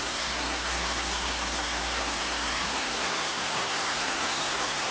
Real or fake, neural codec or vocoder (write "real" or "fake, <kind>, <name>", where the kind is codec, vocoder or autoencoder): fake, codec, SNAC